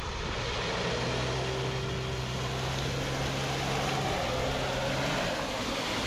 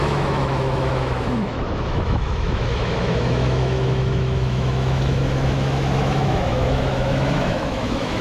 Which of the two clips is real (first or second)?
first